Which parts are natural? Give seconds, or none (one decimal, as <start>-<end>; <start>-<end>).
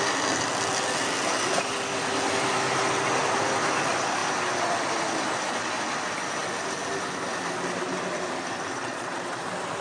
0.0-8.7; 9.4-9.8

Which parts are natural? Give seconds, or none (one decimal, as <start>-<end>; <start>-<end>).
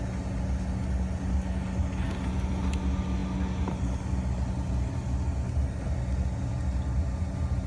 0.0-7.7